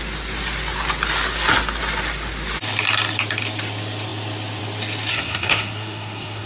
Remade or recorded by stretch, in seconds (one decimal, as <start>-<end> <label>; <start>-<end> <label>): 0.0-5.1 recorded; 5.1-6.5 remade